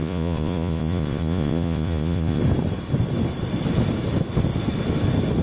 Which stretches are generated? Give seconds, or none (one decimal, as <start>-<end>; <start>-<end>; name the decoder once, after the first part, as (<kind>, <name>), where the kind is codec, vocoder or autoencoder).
0.0-2.4 (vocoder, Vocos)